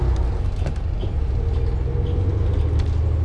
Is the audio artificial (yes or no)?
no